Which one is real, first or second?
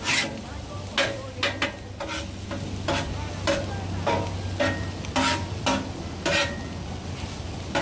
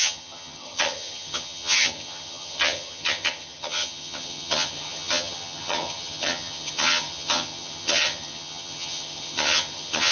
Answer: first